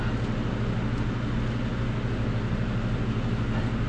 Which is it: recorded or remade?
recorded